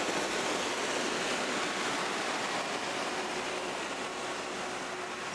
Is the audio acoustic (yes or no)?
yes